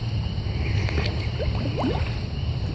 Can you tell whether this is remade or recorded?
recorded